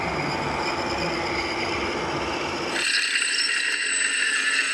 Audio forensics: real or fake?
real